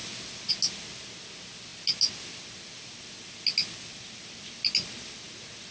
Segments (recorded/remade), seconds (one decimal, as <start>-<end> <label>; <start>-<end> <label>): 0.0-5.7 recorded

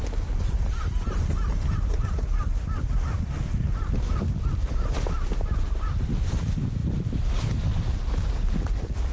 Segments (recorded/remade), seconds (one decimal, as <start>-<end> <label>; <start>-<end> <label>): 0.0-9.1 recorded

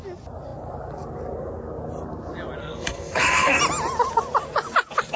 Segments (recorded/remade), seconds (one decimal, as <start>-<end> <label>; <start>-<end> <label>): 0.0-2.6 recorded; 2.6-3.6 remade; 3.6-5.2 recorded

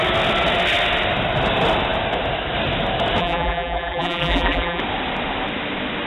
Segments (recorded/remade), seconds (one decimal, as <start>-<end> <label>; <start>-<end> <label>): 0.0-3.2 recorded; 3.2-4.8 remade; 4.8-6.1 recorded

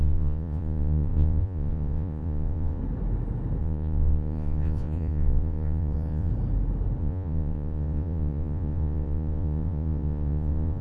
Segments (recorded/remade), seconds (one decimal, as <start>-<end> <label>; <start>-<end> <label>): 0.0-2.8 remade; 2.8-3.6 recorded; 3.6-6.3 remade; 6.3-7.0 recorded; 7.0-10.8 remade

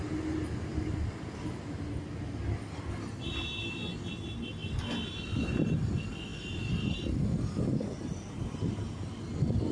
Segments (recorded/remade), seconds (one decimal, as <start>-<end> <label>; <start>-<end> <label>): 0.0-0.7 recorded; 0.7-1.6 remade; 1.6-4.6 recorded; 4.6-5.4 remade; 5.4-9.7 recorded

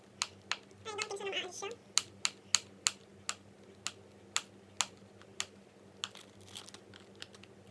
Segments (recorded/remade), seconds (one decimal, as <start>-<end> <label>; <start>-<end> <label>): 0.0-7.7 recorded

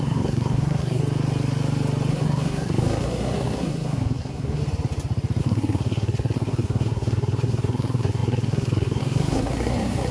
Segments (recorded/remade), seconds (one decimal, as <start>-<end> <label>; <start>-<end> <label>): 0.0-1.0 remade; 1.0-2.1 recorded; 2.1-4.6 remade; 4.6-5.4 recorded; 5.4-10.1 remade